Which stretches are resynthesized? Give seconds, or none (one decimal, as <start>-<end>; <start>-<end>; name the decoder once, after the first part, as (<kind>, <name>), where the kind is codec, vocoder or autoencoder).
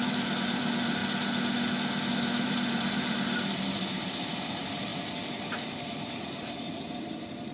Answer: 0.0-1.0 (vocoder, BigVGAN v2); 2.1-4.9; 5.5-7.5